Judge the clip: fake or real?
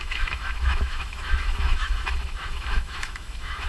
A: fake